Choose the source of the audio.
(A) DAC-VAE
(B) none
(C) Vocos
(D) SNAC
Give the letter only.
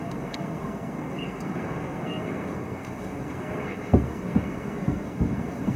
D